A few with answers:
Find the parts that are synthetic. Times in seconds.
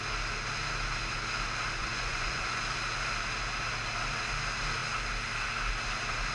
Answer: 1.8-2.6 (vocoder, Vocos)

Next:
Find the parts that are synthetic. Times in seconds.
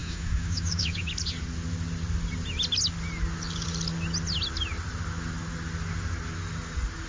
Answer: 0.0-1.1 (autoencoder, DAC-VAE)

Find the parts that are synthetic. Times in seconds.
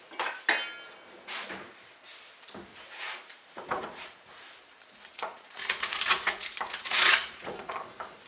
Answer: 2.7-7.7 (vocoder, Vocos)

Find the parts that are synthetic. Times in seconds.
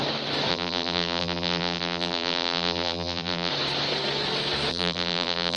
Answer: 0.5-3.5 (vocoder, BigVGAN v2); 4.7-5.6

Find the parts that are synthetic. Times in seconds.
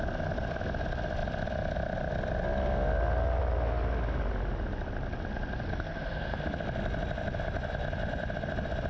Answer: 5.7-6.4 (codec, SNAC)